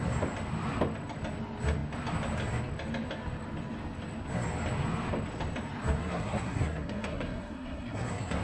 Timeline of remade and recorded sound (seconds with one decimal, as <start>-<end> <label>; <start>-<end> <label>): 0.0-6.0 recorded; 6.0-8.4 remade